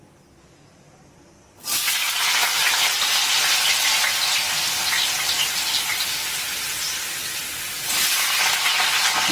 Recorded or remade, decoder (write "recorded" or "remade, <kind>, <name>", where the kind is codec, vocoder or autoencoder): recorded